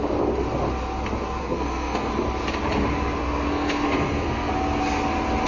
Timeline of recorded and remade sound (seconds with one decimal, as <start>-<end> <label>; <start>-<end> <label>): 0.0-1.4 recorded; 1.4-2.1 remade; 2.1-3.2 recorded; 3.2-4.5 remade; 4.5-5.5 recorded